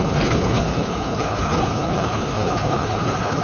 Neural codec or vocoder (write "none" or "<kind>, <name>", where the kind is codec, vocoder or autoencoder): codec, HILCodec